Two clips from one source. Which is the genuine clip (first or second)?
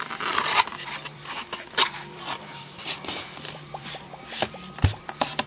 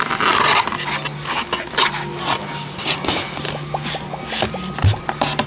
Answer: second